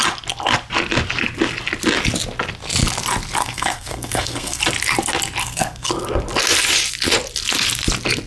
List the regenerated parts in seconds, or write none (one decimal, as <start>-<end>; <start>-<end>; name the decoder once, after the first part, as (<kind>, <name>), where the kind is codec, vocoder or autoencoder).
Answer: 3.4-4.6 (codec, SNAC); 5.4-5.9